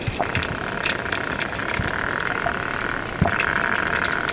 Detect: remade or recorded recorded